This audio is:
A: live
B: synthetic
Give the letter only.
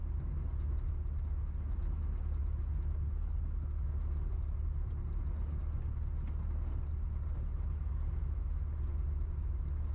A